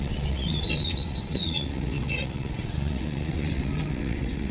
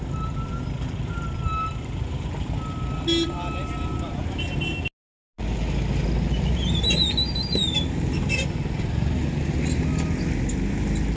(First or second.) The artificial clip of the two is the first